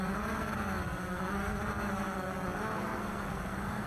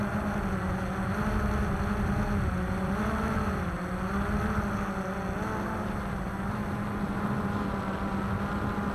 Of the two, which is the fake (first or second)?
first